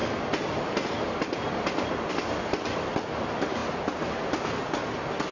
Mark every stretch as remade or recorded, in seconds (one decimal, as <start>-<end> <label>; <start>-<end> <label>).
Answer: 0.0-5.3 recorded